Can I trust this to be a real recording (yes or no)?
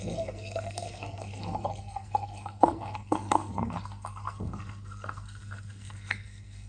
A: no